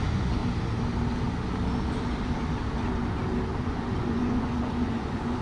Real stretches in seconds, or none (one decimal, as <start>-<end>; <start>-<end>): 0.4-3.6